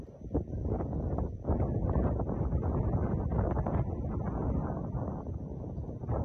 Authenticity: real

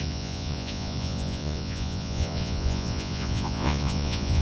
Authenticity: fake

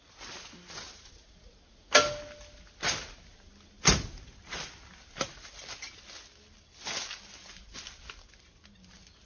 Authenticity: real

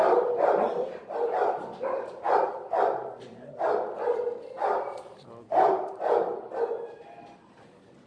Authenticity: real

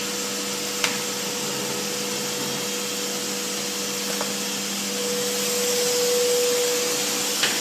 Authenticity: real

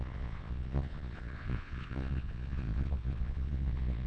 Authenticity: fake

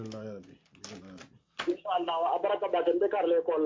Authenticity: real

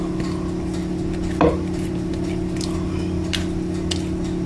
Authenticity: real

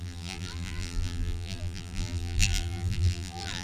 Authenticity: fake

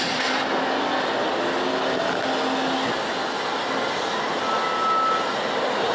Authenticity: real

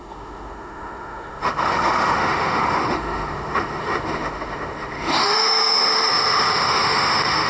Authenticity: fake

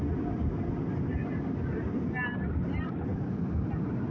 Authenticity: real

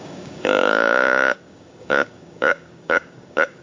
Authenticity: fake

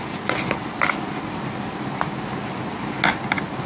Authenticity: real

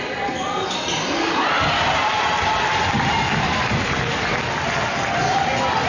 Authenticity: real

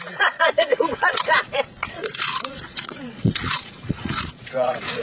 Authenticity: fake